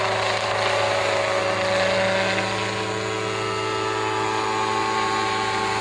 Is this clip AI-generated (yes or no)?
no